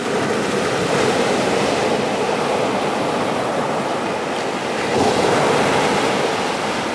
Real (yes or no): yes